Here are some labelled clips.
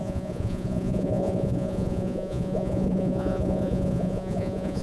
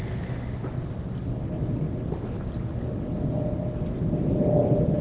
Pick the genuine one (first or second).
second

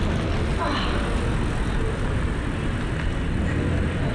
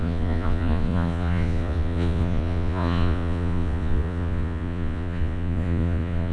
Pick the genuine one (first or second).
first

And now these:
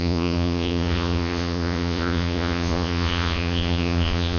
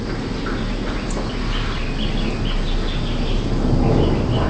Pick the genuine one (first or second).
second